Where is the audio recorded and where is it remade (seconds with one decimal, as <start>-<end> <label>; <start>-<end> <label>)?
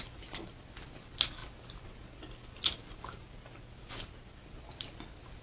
0.0-5.4 recorded